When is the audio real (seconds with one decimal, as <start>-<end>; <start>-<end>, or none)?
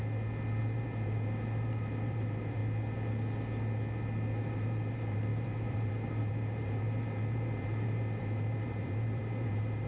0.0-0.6; 2.6-4.4